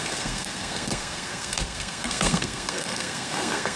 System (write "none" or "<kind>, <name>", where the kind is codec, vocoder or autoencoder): codec, SNAC